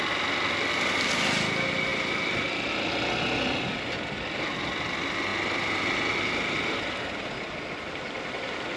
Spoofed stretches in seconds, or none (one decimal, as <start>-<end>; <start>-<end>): none